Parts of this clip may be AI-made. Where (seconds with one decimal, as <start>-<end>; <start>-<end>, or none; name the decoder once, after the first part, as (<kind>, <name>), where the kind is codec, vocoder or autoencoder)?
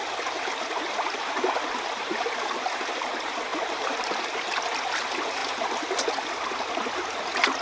3.5-4.6 (vocoder, BigVGAN v2)